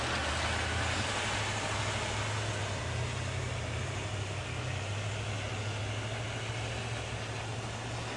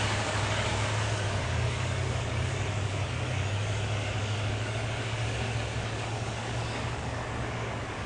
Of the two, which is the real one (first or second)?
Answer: first